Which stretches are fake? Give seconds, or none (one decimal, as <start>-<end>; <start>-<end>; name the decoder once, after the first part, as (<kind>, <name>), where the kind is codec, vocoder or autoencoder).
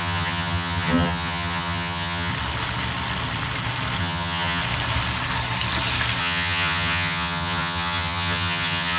0.0-2.3 (vocoder, HiFi-GAN); 4.0-4.6; 6.2-9.0